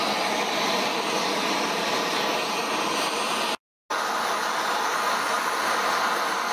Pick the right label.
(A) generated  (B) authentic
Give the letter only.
B